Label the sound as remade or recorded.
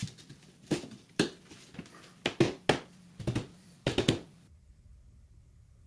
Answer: recorded